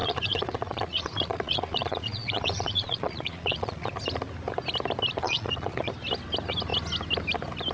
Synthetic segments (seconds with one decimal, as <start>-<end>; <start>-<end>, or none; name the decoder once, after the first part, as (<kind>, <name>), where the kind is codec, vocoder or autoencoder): 0.0-3.9 (vocoder, Vocos); 5.2-5.9